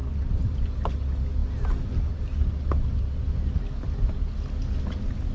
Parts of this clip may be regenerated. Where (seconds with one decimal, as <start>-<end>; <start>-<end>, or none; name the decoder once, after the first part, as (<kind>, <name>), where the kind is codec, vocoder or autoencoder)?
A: none